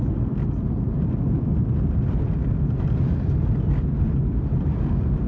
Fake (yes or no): no